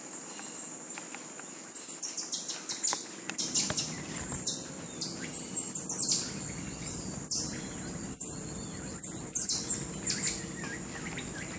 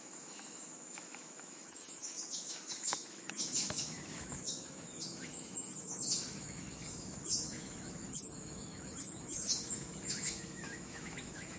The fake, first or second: second